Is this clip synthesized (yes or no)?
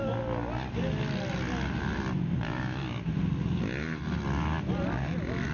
no